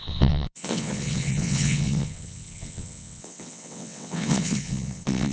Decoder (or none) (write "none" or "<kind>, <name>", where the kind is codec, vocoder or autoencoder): vocoder, WaveNeXt